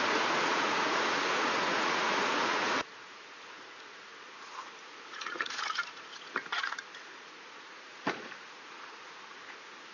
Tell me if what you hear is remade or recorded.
remade